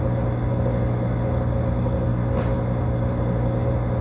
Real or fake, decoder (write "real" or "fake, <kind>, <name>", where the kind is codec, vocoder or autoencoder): real